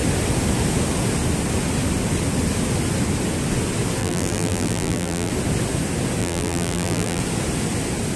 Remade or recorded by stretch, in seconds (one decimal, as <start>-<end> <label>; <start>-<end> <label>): 0.0-4.0 recorded; 4.0-5.3 remade; 5.3-6.2 recorded; 6.2-7.2 remade; 7.2-8.2 recorded